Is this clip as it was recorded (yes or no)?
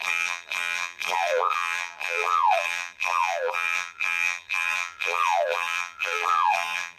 no